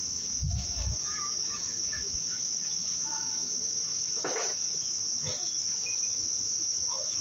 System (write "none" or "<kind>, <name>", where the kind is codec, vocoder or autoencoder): autoencoder, DAC-VAE